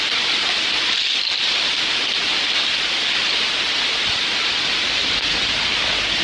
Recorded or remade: recorded